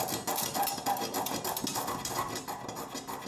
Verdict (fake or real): real